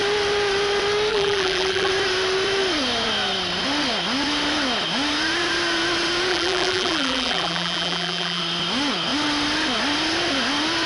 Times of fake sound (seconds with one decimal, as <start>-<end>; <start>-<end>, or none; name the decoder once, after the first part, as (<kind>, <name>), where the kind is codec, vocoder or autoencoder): 1.1-1.9 (vocoder, BigVGAN v2); 6.3-8.4